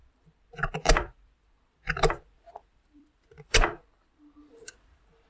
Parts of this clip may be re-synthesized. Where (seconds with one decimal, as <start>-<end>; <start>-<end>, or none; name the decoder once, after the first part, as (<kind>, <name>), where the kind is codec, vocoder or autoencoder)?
0.0-5.3 (vocoder, BigVGAN v2)